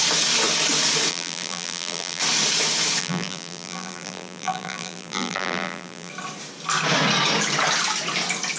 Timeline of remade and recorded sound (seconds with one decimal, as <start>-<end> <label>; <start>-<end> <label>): 0.0-1.1 recorded; 1.1-2.2 remade; 2.2-3.0 recorded; 3.0-6.1 remade; 6.1-8.6 recorded